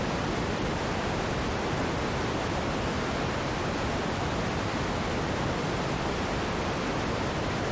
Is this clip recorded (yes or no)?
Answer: yes